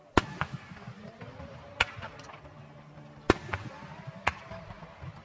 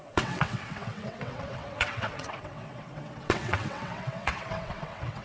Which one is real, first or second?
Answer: first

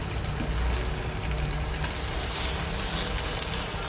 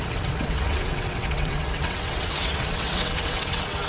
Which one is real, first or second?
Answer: first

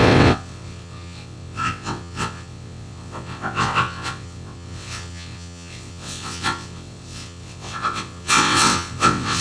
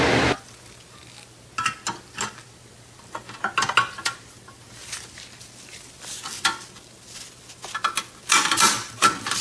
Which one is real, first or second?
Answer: second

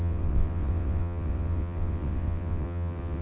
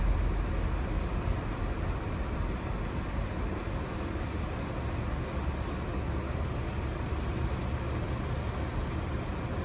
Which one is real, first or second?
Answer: second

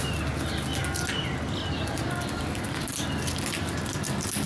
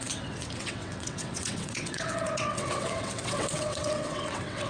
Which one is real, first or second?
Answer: first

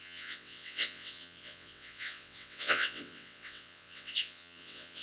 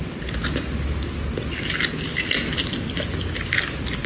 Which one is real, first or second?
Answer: second